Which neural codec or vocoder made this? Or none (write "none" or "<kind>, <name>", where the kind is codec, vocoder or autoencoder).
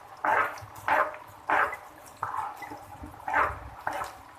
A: vocoder, BigVGAN v2